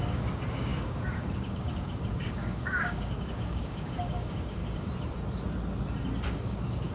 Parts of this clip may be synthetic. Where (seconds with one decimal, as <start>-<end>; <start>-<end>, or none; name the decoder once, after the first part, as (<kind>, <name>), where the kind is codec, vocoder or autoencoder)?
0.0-4.6 (codec, DAC); 6.3-6.9